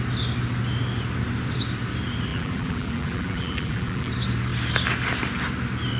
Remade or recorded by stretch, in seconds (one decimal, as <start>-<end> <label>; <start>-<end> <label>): 0.0-2.3 recorded; 2.3-4.1 remade; 4.1-6.0 recorded